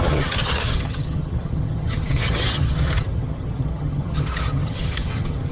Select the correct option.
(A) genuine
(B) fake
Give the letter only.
B